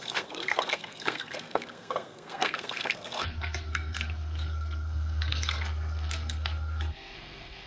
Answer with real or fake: fake